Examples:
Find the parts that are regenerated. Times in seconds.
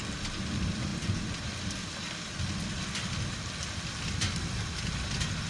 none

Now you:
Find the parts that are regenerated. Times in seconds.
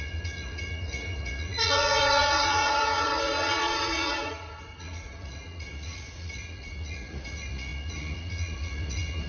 0.0-9.3 (vocoder, Vocos)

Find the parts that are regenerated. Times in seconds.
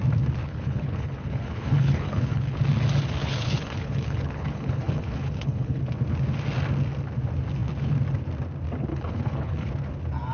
0.4-2.6 (codec, HILCodec); 3.2-5.8; 8.9-9.7